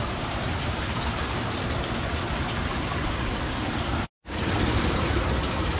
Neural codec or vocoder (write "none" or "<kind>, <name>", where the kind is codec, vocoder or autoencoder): none